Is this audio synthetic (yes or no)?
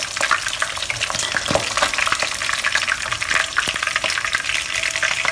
no